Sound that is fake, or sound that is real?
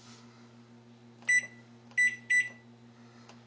real